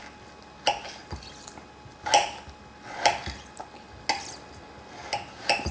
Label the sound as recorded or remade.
recorded